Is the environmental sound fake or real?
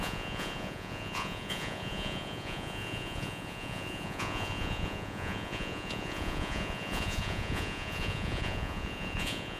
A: fake